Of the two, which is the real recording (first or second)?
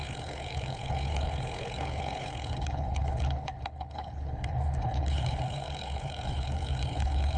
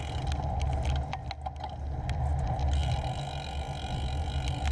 second